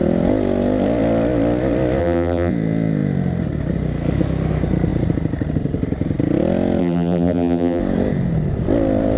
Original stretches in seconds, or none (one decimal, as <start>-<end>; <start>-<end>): 0.0-2.0; 2.5-6.8; 7.8-9.2